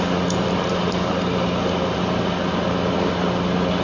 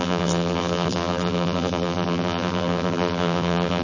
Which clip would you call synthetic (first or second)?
second